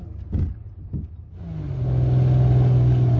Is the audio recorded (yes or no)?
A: yes